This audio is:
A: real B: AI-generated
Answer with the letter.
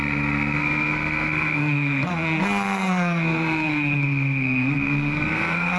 B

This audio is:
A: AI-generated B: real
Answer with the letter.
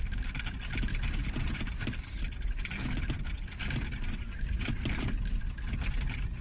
B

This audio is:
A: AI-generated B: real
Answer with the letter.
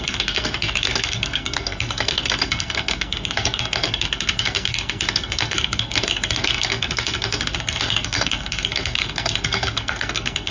A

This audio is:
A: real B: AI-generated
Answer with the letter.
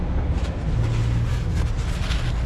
A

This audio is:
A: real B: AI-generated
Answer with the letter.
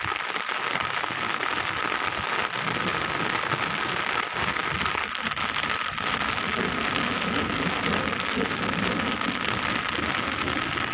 A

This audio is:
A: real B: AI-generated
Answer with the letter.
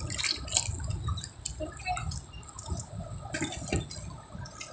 A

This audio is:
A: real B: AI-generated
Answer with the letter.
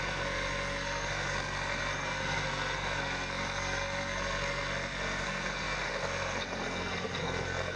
B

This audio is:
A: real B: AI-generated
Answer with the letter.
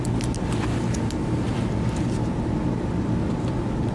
A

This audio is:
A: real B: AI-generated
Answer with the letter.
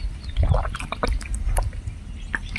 A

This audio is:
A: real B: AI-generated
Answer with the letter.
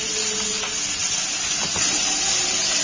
A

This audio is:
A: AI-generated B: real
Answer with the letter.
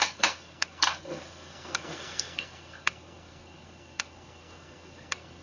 A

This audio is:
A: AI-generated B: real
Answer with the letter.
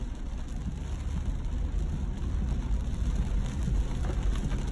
B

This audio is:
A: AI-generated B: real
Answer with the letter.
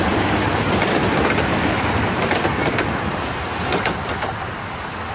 B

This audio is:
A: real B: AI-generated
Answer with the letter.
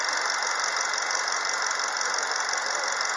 A